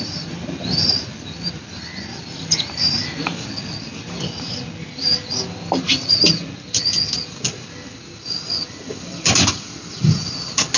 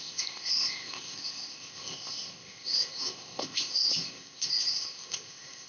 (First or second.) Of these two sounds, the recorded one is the first